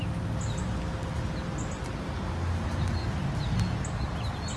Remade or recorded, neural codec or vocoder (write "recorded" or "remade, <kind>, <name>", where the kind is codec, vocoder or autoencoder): recorded